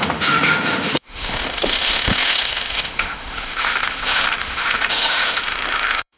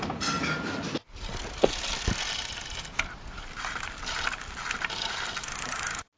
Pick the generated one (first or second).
first